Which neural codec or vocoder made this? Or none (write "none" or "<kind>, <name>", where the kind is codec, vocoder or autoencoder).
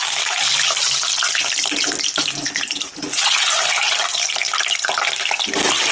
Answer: vocoder, BigVGAN v2